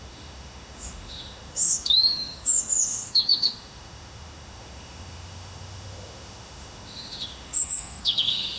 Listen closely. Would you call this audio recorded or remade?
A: remade